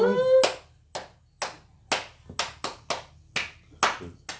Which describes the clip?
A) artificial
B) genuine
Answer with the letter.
B